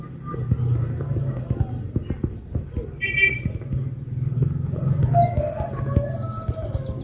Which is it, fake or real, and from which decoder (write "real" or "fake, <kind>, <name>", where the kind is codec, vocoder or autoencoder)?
real